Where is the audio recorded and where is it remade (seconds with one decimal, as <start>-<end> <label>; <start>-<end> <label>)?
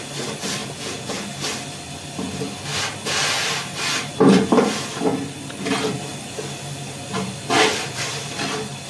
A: 0.0-0.6 recorded; 0.6-1.2 remade; 1.2-8.9 recorded